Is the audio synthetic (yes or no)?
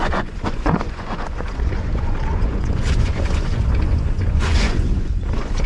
yes